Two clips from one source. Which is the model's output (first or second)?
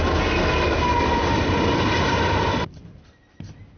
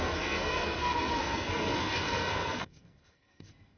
second